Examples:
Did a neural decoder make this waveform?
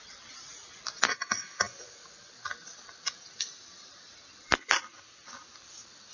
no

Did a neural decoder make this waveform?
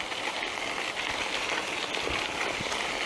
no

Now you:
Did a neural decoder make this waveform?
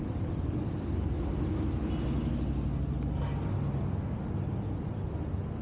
no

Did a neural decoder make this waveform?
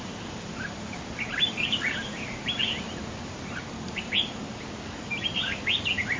yes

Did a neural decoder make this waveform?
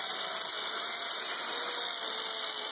no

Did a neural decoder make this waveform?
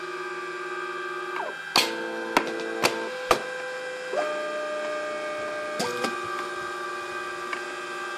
no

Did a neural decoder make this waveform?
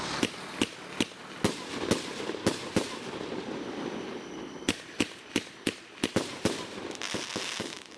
no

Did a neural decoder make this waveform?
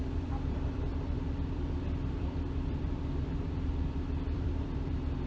yes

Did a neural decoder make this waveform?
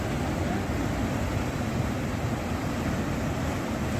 no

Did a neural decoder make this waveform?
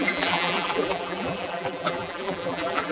yes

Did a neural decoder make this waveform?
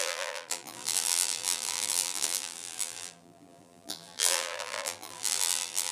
yes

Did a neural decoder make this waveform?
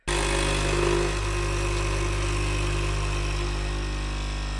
no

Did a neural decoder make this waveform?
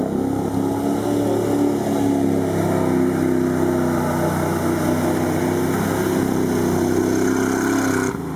no